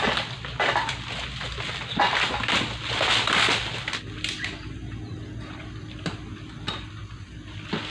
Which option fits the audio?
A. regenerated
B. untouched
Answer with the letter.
B